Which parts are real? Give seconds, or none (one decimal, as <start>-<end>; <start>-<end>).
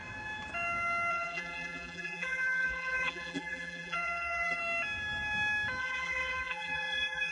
0.0-1.1; 4.6-5.8